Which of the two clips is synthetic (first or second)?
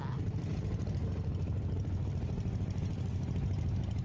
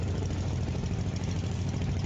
first